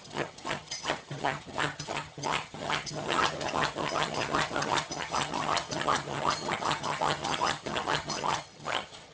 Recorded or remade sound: remade